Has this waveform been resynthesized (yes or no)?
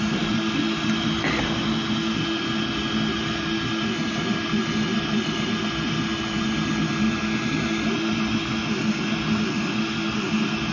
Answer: no